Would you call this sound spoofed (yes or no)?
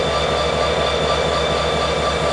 no